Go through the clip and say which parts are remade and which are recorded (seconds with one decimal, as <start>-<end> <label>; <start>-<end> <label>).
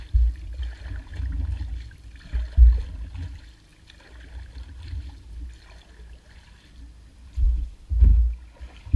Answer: 0.0-9.0 recorded